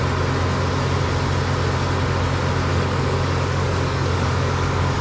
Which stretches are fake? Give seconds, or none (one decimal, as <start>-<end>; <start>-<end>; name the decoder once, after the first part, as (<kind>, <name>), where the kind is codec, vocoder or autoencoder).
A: 2.7-5.0 (codec, DAC)